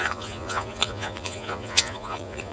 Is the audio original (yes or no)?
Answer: no